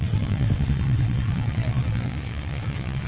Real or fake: fake